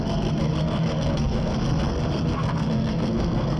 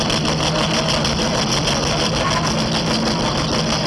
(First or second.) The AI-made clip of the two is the first